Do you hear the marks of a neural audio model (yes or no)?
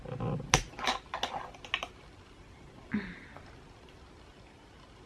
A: no